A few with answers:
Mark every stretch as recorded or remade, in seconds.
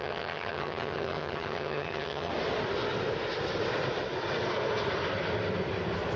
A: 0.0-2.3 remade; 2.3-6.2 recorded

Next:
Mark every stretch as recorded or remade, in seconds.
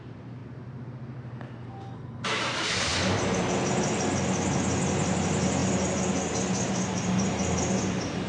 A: 0.0-0.4 remade; 0.4-2.4 recorded; 2.4-2.9 remade; 2.9-5.0 recorded; 5.0-5.6 remade; 5.6-7.8 recorded; 7.8-8.3 remade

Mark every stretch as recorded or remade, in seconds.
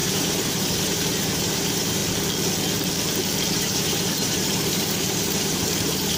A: 0.0-2.0 remade; 2.0-3.4 recorded; 3.4-6.2 remade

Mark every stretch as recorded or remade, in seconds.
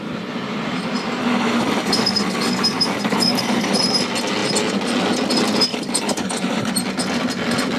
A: 0.0-1.2 recorded; 1.2-3.8 remade; 3.8-5.7 recorded; 5.7-6.7 remade; 6.7-7.8 recorded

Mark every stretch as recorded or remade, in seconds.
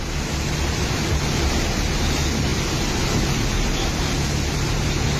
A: 0.0-5.2 recorded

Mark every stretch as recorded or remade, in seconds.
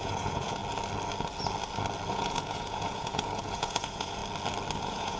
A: 0.0-0.6 remade; 0.6-2.1 recorded; 2.1-4.2 remade; 4.2-4.8 recorded; 4.8-5.2 remade